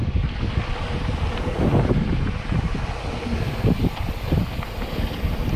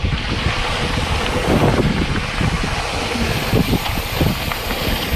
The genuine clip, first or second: first